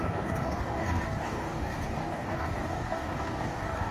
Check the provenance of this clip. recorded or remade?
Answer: remade